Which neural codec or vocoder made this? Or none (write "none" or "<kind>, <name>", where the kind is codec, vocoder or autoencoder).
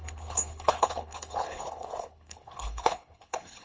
codec, HILCodec